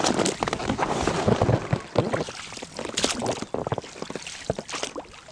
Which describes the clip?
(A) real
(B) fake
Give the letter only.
A